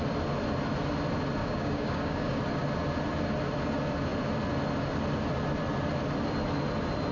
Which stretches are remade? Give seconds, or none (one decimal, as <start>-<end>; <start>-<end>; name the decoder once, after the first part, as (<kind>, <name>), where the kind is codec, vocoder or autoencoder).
1.4-2.4 (codec, DAC)